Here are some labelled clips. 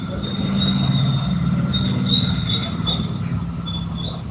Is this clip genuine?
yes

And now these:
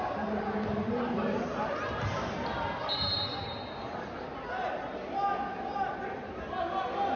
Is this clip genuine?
yes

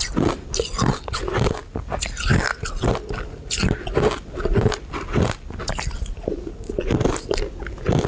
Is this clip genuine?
yes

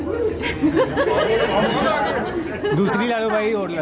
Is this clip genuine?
yes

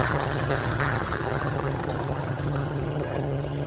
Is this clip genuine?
no